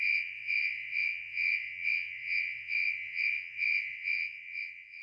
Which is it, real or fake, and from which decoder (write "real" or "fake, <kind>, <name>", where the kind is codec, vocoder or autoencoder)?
fake, vocoder, Vocos